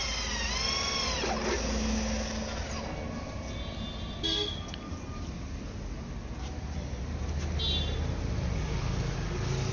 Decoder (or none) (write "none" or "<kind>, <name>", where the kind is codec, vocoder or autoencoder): none